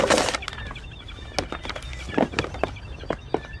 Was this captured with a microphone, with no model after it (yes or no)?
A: yes